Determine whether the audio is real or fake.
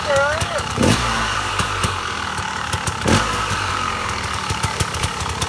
fake